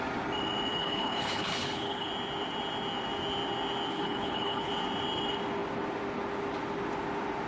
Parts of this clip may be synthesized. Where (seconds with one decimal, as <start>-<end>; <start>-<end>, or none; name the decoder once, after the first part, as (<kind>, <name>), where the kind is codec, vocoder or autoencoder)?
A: 0.7-2.1 (codec, HILCodec); 3.9-4.7